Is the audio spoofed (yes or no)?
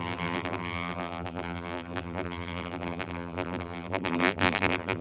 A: yes